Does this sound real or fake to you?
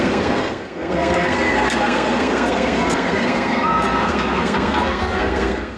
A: fake